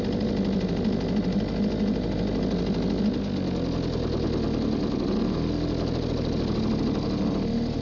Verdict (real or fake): real